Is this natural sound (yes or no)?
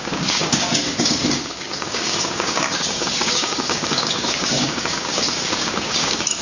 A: no